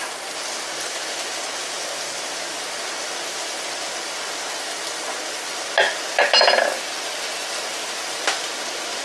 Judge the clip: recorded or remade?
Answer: recorded